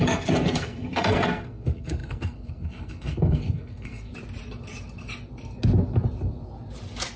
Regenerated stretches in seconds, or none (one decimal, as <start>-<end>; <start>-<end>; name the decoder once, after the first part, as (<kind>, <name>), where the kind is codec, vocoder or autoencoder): 0.0-4.1 (codec, SNAC)